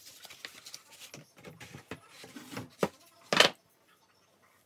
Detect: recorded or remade recorded